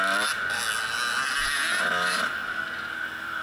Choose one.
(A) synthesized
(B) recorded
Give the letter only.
B